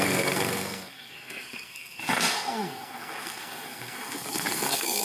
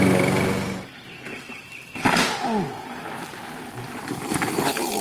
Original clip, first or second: second